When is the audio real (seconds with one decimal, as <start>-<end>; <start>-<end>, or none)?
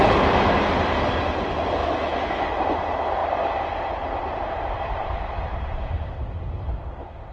0.0-1.8; 2.5-7.3